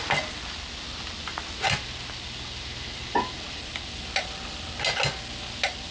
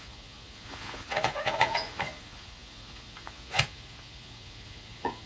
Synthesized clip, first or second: second